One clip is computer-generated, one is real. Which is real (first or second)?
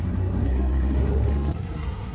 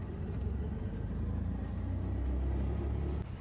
second